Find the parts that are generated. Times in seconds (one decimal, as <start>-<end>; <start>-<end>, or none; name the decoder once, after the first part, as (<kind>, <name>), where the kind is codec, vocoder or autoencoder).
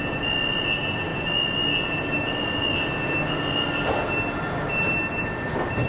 none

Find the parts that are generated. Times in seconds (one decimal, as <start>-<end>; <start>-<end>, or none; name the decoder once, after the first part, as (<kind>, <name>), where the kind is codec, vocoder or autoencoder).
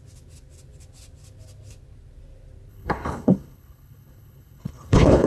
2.7-5.3 (codec, HILCodec)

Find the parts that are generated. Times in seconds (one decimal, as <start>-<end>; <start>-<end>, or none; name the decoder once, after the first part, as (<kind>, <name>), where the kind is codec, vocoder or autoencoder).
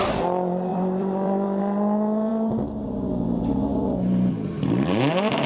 0.7-1.6 (vocoder, BigVGAN v2); 2.3-4.5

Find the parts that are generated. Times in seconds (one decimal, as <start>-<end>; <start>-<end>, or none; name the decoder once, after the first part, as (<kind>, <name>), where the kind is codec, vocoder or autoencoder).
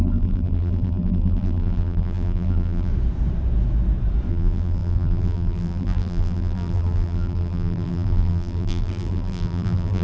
0.0-2.9 (vocoder, BigVGAN v2); 4.3-10.0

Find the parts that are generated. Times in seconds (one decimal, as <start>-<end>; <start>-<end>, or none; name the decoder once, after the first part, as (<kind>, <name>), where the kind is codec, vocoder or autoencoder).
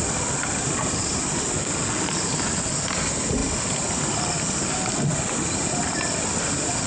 none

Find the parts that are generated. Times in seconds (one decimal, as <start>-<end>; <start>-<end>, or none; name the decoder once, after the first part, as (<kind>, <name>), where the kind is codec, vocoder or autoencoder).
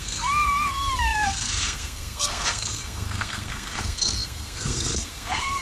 0.0-5.6 (codec, SNAC)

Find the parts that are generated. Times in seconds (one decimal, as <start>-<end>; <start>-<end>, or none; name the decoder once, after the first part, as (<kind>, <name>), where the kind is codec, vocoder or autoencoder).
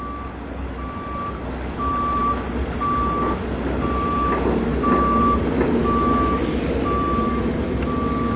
none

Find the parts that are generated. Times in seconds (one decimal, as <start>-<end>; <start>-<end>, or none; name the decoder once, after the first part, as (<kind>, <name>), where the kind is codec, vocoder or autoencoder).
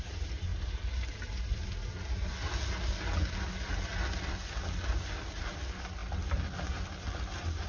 none